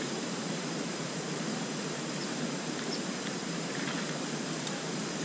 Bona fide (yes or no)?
no